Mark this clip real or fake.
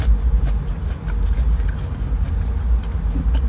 real